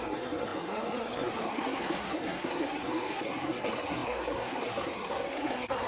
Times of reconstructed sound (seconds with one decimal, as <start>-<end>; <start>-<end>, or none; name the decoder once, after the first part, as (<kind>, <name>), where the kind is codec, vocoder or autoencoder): 0.0-5.9 (codec, SNAC)